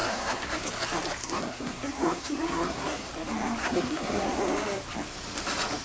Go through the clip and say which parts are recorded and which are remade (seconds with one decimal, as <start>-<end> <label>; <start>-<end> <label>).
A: 0.0-0.7 remade; 0.7-1.2 recorded; 1.2-3.1 remade; 3.1-3.6 recorded; 3.6-4.4 remade; 4.4-5.8 recorded